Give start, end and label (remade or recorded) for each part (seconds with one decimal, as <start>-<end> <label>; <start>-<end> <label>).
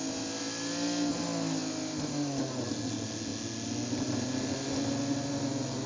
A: 0.0-5.9 recorded